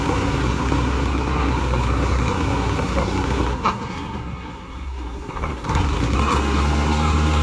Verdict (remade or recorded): remade